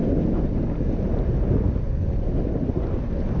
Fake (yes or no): no